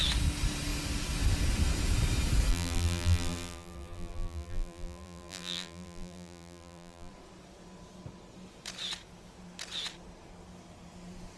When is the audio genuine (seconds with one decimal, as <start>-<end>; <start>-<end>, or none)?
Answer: 0.0-2.5; 7.1-11.4